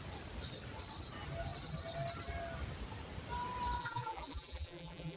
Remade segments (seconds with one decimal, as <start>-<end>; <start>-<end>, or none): 3.8-5.2